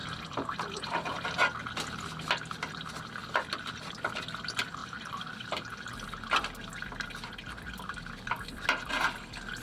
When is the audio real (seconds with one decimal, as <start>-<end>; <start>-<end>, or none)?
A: 1.4-4.8; 5.7-9.6